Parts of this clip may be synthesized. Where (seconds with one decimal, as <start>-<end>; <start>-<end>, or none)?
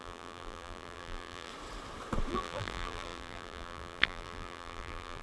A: 0.0-1.5; 2.3-5.2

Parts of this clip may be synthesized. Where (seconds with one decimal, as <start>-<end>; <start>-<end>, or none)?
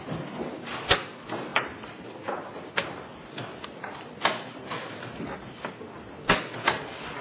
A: 1.5-2.7; 3.1-5.5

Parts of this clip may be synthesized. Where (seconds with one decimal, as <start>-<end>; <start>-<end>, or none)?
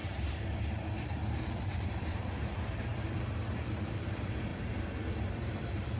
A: 0.0-6.0